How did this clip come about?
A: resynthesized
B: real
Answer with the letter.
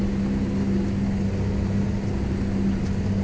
B